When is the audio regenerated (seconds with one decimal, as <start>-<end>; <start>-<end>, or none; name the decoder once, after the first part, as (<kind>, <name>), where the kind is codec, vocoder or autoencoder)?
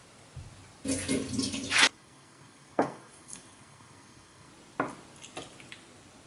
1.9-4.5 (codec, SNAC)